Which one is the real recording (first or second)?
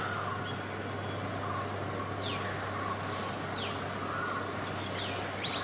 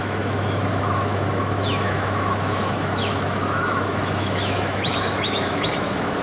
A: first